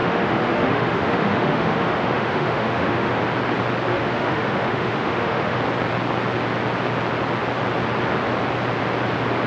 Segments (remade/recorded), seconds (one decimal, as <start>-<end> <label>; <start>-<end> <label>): 0.0-3.1 remade; 3.1-3.9 recorded; 3.9-5.6 remade; 5.6-9.5 recorded